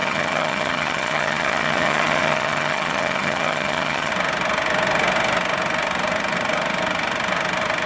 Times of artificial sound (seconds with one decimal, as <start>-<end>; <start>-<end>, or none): 0.0-4.1

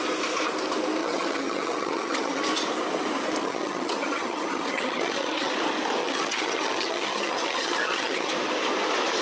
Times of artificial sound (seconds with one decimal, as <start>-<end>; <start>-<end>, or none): 1.0-2.4; 3.4-5.5; 6.0-8.3

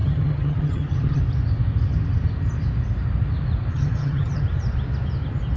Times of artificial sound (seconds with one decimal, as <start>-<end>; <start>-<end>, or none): 0.0-1.2; 3.7-4.4